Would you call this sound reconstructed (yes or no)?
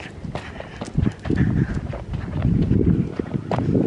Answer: no